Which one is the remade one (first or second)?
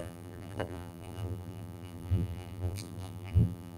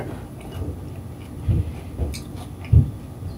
first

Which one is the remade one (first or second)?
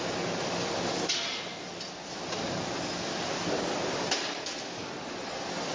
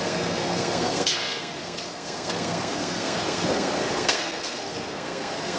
second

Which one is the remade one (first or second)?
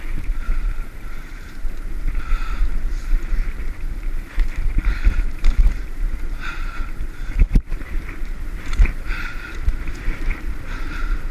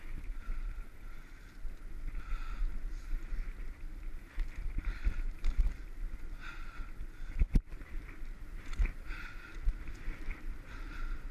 first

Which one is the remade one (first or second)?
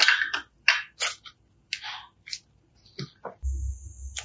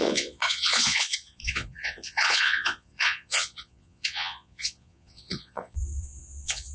second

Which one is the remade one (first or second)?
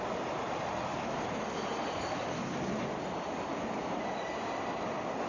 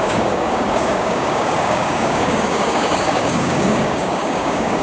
second